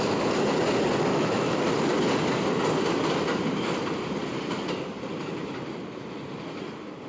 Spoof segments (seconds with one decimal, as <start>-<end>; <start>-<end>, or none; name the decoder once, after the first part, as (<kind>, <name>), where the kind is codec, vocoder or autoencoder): 1.1-1.6 (autoencoder, DAC-VAE)

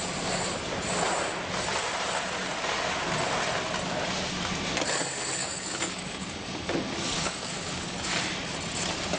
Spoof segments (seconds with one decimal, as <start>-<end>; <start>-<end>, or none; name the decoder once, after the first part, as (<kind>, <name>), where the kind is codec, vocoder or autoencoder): 5.4-8.5 (codec, DAC)